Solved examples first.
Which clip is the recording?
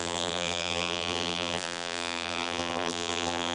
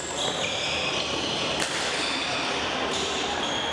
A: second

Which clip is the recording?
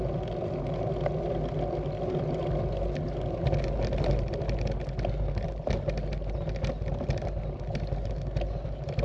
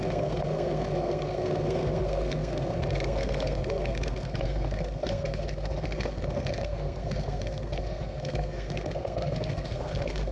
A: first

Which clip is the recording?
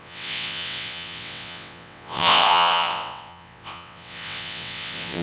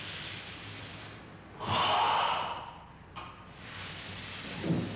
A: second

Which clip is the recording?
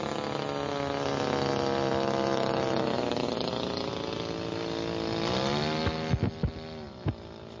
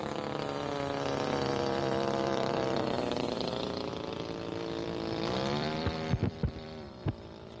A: first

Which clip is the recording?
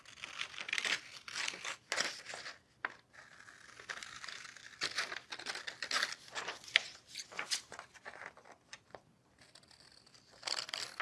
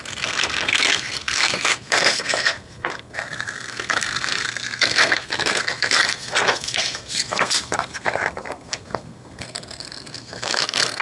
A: first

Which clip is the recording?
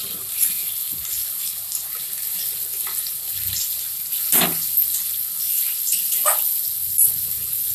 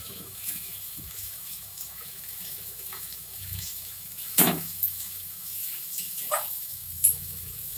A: first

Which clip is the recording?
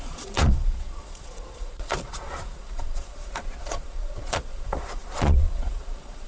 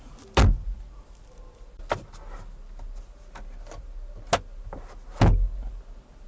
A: second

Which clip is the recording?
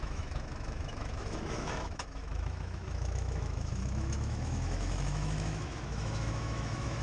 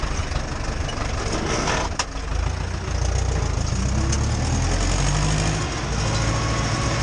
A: second